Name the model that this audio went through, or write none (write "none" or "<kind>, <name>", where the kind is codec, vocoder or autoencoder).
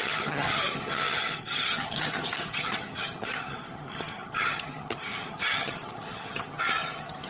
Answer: vocoder, HiFi-GAN